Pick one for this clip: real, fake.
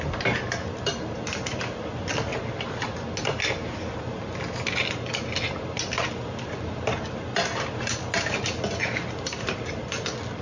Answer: real